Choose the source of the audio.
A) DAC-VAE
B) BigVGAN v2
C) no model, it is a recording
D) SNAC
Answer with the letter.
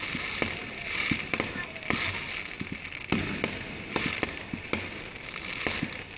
C